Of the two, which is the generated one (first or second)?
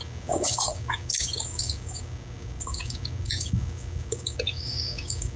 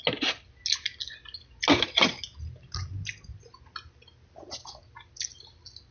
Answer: first